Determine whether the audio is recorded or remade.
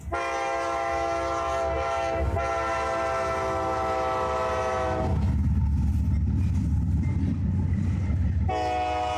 recorded